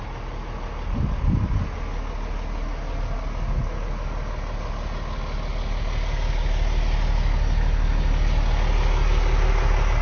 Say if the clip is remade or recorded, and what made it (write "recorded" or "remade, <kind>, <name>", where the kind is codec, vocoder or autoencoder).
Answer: recorded